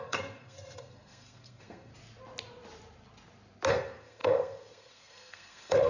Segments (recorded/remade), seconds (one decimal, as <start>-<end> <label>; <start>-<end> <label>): 0.0-1.9 remade; 1.9-3.7 recorded; 3.7-5.9 remade